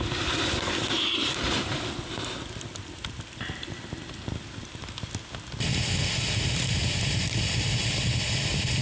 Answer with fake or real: real